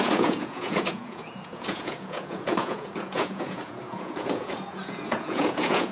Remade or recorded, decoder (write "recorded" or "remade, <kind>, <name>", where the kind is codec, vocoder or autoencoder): remade, vocoder, Vocos